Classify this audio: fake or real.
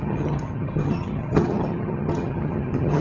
fake